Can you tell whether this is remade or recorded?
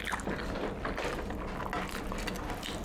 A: recorded